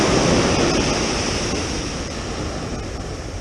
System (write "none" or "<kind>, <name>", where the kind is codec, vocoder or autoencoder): vocoder, BigVGAN v2